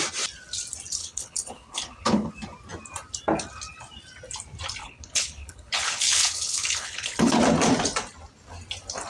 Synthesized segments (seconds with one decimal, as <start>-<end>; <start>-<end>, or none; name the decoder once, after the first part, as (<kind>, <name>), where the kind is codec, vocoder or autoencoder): 1.0-2.3 (codec, HILCodec); 4.8-7.4